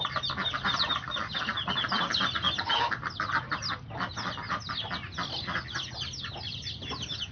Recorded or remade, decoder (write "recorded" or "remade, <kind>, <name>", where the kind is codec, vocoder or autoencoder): recorded